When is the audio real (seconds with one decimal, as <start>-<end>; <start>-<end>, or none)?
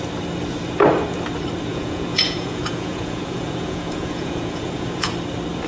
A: 0.0-1.7; 5.1-5.7